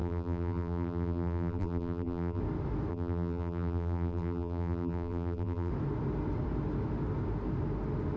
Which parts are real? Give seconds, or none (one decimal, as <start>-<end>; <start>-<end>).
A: 2.4-2.9; 5.7-8.2

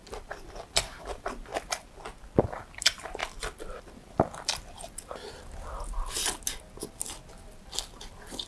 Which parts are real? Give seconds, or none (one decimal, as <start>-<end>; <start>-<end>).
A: 1.5-2.4; 3.2-7.3